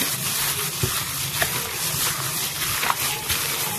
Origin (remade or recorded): recorded